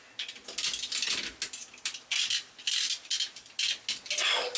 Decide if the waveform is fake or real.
real